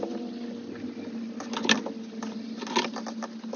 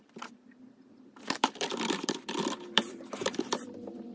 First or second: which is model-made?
second